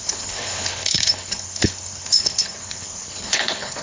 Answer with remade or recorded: remade